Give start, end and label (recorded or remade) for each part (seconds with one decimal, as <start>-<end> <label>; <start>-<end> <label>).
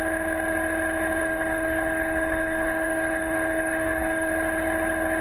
0.0-1.2 recorded; 1.2-4.3 remade; 4.3-5.2 recorded